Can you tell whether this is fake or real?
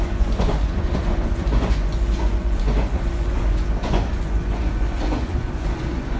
fake